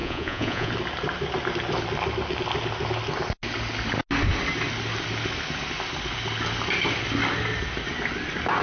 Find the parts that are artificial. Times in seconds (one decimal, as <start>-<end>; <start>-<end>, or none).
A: 0.0-0.7

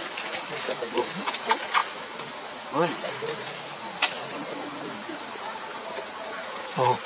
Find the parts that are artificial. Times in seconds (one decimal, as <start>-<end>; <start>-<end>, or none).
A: 0.0-7.1